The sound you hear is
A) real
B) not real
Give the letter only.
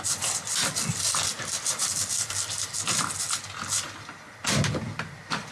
A